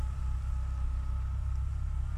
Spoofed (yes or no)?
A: no